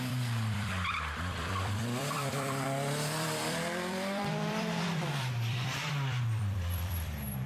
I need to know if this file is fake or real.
fake